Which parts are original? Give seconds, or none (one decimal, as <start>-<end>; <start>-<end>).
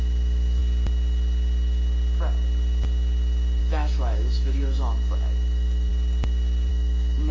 0.6-3.6; 5.9-6.7